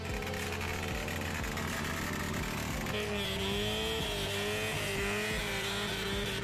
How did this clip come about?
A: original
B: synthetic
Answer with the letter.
A